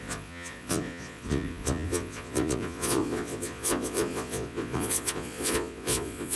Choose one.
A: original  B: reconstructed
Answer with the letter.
B